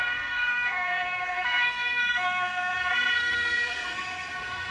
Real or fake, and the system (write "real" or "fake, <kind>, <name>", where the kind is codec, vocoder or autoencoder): fake, codec, SNAC